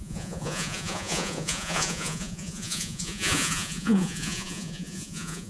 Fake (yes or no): yes